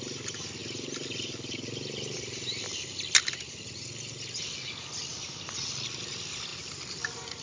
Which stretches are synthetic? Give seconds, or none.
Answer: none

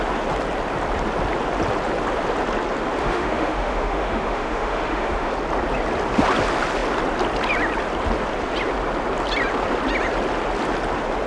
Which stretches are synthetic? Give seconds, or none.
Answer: 3.0-5.3 (autoencoder, DAC-VAE)

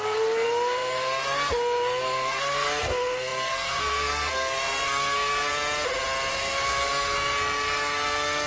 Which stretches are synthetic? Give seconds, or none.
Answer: 0.0-5.5 (codec, SNAC); 6.3-8.5

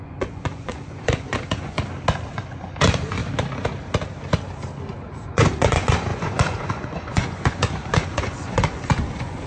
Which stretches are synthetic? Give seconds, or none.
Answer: 0.0-1.8 (vocoder, Vocos); 2.3-3.2; 5.1-9.5

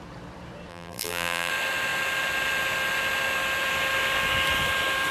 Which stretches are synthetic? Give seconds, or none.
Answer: 0.7-1.5 (vocoder, BigVGAN v2)

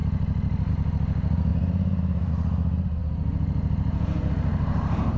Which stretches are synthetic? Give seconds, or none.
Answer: 1.5-2.3 (vocoder, BigVGAN v2); 3.0-4.3